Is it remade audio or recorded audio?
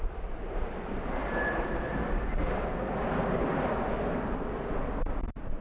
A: recorded